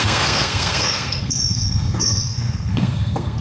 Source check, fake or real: fake